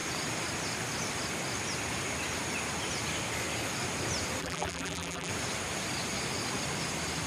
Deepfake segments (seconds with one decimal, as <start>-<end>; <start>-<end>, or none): 4.4-5.3

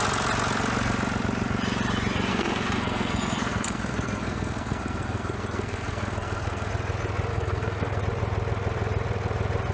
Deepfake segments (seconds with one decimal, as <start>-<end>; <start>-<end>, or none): 2.3-6.7; 7.3-8.0

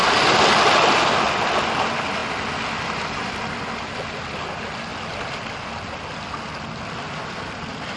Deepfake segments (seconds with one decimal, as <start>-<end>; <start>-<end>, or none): none

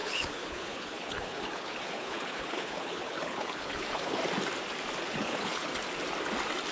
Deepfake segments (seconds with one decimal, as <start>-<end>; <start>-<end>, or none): 0.0-4.2; 5.1-5.7

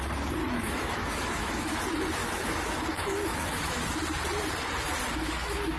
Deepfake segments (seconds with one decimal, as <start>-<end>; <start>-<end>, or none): 0.4-1.8; 2.2-3.8; 5.1-5.8

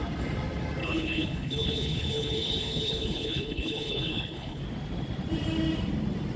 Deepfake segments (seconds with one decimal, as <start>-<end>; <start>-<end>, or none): 0.8-4.6

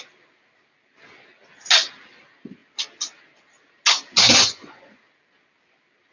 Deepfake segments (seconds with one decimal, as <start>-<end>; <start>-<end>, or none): 4.2-5.0

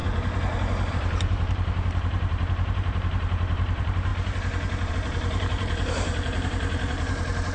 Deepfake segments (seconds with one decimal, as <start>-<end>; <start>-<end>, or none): 0.9-4.1; 4.9-7.5